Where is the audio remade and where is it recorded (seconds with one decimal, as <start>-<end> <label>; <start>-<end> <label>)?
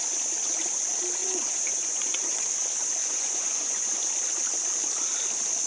0.0-1.2 recorded; 1.2-2.5 remade; 2.5-3.0 recorded; 3.0-4.0 remade; 4.0-5.7 recorded